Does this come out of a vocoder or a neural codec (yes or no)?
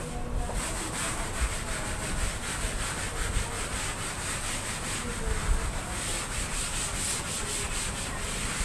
no